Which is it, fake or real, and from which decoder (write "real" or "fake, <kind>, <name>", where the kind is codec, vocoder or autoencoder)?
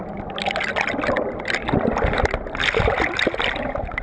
real